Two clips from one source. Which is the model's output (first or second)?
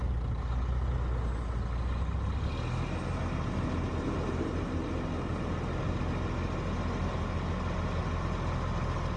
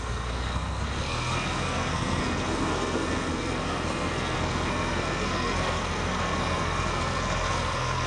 second